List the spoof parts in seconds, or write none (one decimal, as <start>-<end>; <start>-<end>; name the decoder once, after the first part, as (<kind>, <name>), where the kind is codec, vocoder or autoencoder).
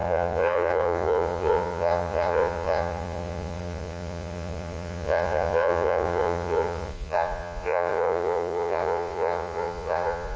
0.0-10.4 (vocoder, Vocos)